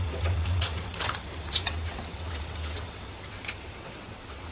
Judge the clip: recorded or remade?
remade